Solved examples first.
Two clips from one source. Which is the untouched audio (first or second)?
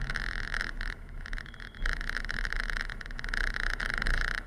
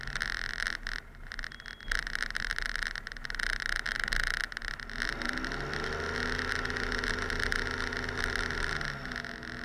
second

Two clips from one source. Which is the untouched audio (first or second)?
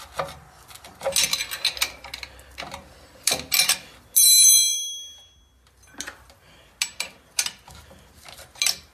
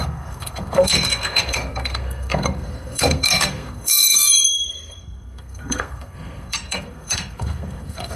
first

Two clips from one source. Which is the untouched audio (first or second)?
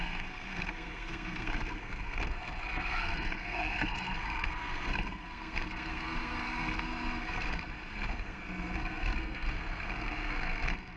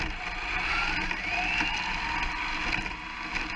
second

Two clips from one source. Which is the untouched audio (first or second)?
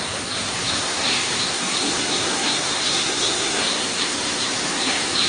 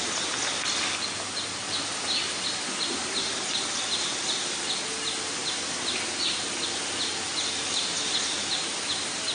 second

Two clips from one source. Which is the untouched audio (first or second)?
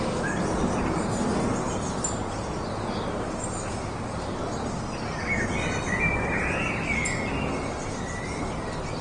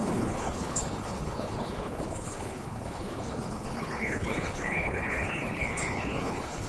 first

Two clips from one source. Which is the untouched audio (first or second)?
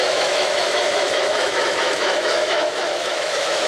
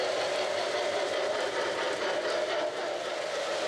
second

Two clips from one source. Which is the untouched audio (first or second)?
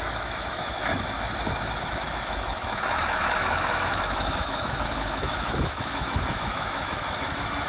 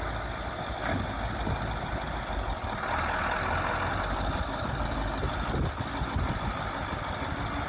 second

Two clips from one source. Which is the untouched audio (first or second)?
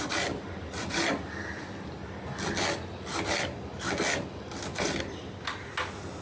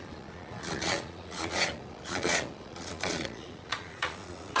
first